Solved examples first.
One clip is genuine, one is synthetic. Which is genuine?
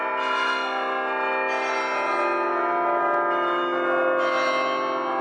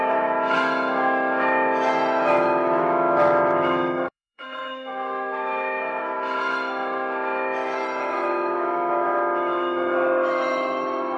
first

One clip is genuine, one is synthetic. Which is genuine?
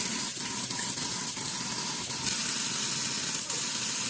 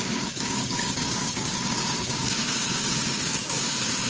first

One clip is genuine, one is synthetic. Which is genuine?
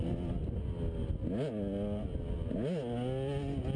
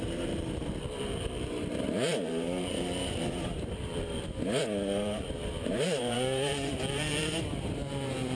first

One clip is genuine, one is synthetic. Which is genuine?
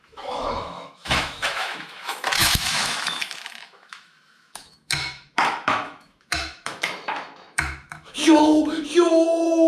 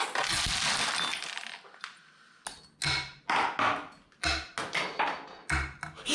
second